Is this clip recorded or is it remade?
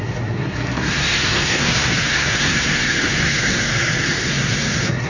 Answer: remade